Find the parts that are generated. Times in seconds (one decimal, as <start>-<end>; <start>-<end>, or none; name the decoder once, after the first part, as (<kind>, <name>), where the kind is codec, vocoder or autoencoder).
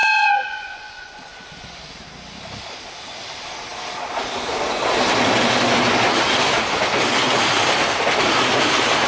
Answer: 0.0-1.9 (vocoder, Vocos)